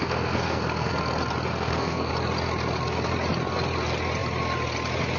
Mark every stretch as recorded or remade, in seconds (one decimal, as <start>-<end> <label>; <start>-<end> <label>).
0.0-0.9 remade; 0.9-1.5 recorded; 1.5-2.1 remade; 2.1-5.2 recorded